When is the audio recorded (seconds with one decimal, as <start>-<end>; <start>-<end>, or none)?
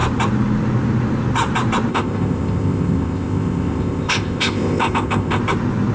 0.0-1.9; 5.4-5.9